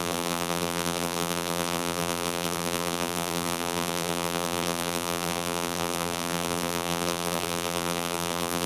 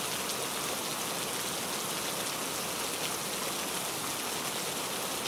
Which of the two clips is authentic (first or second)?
second